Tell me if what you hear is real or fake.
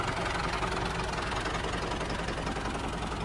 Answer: real